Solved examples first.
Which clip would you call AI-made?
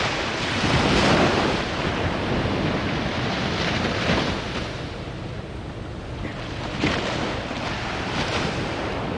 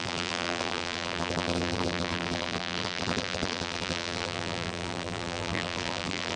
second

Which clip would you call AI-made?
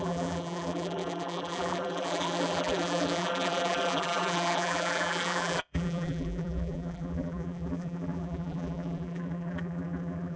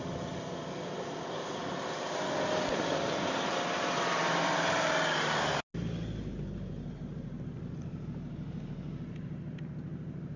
first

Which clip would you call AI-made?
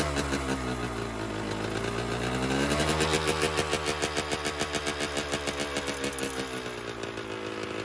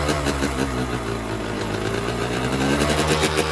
second